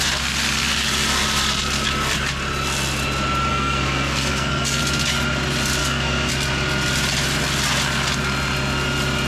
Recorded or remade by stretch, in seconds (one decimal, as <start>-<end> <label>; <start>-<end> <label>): 0.0-3.5 recorded; 3.5-4.8 remade; 4.8-5.8 recorded; 5.8-6.3 remade; 6.3-9.3 recorded